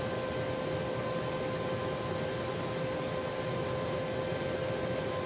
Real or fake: real